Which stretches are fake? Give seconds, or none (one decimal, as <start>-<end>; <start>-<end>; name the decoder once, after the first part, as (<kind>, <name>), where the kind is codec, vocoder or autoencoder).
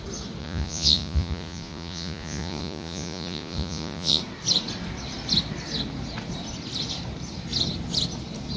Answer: 0.4-4.2 (vocoder, Vocos)